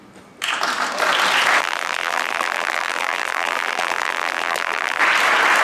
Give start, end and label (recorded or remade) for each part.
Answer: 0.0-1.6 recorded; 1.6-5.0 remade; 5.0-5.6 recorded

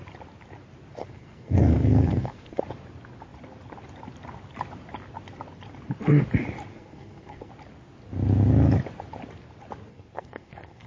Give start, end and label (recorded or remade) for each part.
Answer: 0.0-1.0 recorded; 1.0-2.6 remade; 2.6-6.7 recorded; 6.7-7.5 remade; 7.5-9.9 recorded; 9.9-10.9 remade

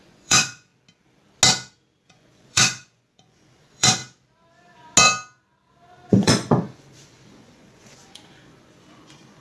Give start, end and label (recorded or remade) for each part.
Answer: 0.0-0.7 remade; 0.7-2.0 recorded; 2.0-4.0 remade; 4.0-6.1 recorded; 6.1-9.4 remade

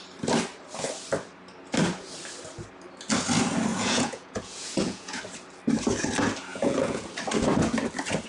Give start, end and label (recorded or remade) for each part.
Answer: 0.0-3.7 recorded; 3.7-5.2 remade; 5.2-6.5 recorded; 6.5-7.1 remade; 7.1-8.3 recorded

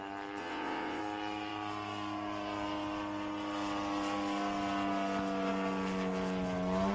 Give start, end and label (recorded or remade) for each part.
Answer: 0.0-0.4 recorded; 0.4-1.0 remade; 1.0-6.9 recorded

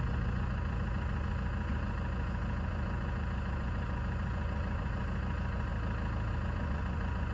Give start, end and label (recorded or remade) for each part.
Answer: 0.0-5.7 remade; 5.7-6.3 recorded; 6.3-7.3 remade

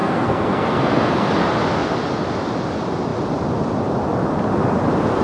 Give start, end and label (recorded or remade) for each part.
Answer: 0.0-1.3 remade; 1.3-5.2 recorded

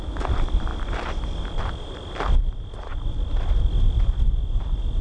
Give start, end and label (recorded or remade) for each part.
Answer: 0.0-5.0 recorded